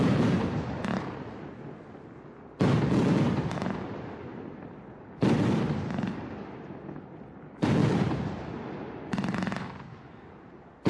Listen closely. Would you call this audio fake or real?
real